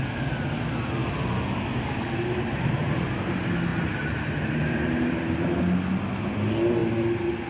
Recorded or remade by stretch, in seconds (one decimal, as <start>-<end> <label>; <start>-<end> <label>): 0.0-3.7 recorded; 3.7-5.6 remade; 5.6-7.5 recorded